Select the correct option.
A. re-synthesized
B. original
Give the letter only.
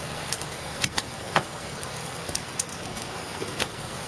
A